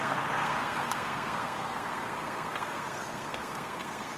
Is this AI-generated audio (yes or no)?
yes